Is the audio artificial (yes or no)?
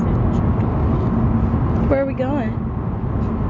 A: no